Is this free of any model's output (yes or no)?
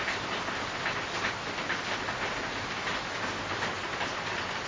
yes